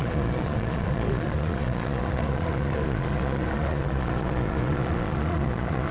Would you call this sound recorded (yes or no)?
no